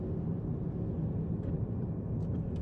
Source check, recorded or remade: recorded